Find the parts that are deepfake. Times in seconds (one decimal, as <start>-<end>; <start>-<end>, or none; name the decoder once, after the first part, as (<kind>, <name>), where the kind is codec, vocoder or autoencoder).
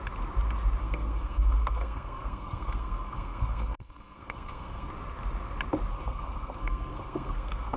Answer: 0.8-4.9 (codec, SNAC); 5.9-7.8